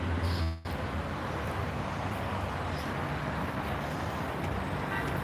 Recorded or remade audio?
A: recorded